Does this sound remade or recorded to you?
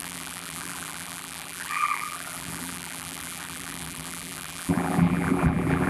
remade